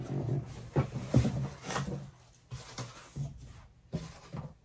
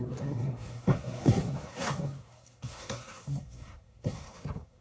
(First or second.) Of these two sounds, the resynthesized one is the second